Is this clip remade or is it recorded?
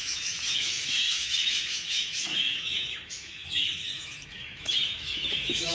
remade